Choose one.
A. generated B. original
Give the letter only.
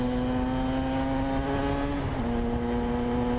B